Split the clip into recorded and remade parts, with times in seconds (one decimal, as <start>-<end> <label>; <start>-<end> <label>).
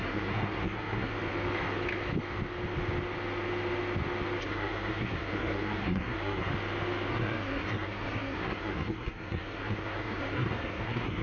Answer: 0.0-1.1 remade; 1.1-4.4 recorded; 4.4-6.5 remade; 6.5-7.1 recorded; 7.1-11.2 remade